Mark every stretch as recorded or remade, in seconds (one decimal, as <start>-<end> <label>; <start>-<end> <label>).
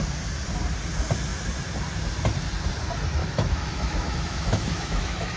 0.0-3.2 recorded; 3.2-5.4 remade